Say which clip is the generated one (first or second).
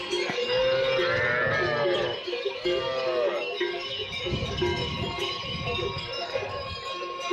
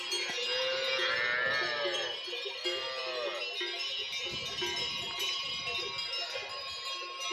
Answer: first